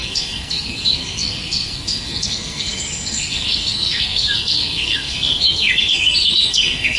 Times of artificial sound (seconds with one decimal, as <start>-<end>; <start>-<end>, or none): 0.0-7.0